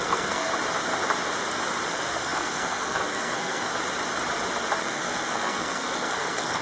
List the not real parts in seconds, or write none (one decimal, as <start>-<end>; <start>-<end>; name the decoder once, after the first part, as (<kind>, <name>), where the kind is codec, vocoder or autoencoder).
0.0-0.5 (codec, SNAC); 1.9-3.7; 4.8-6.6